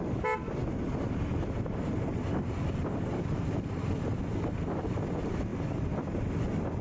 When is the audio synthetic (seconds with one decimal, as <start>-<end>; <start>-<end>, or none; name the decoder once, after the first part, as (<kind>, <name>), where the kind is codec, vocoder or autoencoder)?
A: none